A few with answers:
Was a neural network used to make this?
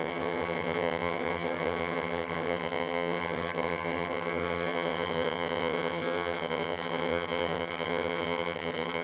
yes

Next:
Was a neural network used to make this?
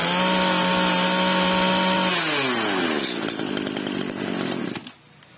no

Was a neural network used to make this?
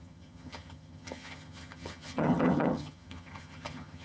yes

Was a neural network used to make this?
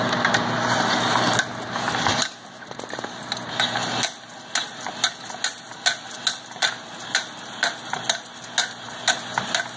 no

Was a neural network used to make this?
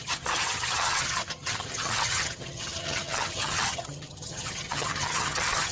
yes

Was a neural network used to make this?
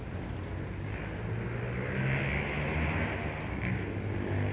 no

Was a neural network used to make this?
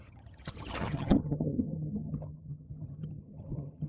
yes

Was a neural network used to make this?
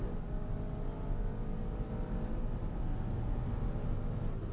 no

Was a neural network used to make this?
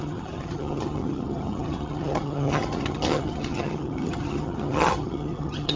yes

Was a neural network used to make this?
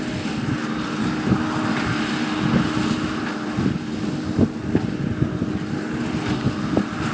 no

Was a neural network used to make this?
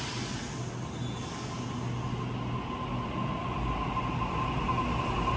no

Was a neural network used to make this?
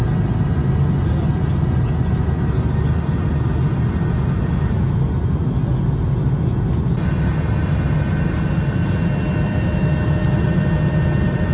no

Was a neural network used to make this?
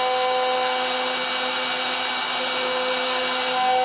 no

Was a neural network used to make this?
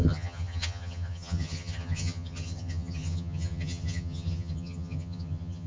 yes